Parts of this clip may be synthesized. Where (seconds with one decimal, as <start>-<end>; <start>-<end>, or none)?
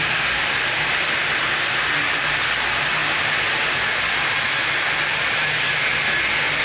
none